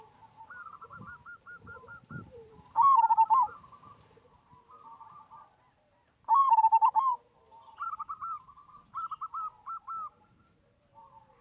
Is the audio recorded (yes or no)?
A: no